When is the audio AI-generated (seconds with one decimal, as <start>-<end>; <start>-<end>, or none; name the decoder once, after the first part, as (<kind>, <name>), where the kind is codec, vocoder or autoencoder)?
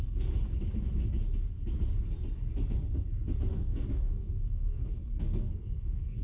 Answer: 3.5-6.2 (codec, SNAC)